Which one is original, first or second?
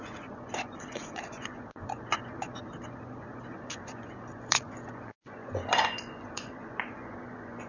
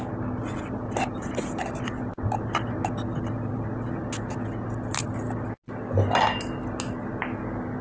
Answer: second